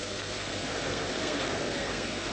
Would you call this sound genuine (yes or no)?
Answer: no